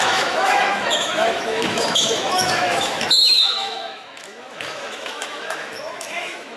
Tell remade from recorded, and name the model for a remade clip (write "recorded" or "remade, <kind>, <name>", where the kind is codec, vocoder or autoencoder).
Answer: remade, autoencoder, DAC-VAE